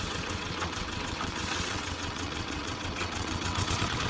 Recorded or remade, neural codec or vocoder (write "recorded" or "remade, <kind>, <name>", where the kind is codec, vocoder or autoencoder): remade, vocoder, WaveNeXt